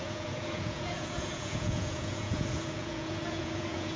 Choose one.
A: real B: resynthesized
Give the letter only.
B